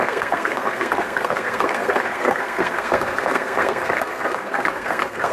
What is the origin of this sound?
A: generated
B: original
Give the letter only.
A